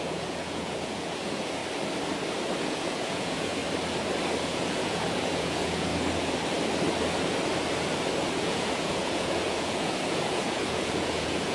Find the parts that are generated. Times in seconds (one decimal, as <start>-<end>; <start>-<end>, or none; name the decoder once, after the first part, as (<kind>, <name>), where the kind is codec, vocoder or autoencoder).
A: 0.0-1.6 (vocoder, Vocos); 2.6-3.6; 4.4-5.9; 8.4-11.5